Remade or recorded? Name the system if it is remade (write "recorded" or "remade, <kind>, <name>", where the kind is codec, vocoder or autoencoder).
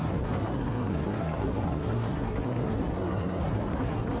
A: remade, codec, SNAC